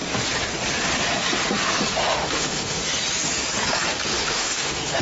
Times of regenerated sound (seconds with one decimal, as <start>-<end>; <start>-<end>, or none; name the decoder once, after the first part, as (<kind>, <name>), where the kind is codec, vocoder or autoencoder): 1.9-2.8 (autoencoder, DAC-VAE); 4.1-5.0